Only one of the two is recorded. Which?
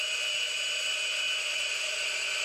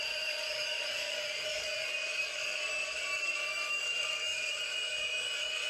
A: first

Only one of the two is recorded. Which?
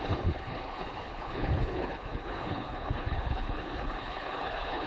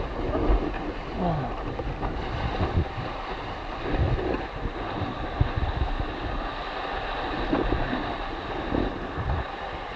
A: second